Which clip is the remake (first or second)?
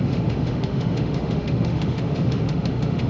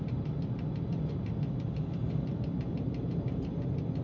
first